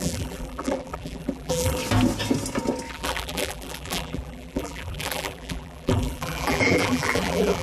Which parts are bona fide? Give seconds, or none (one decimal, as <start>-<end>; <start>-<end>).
1.8-2.9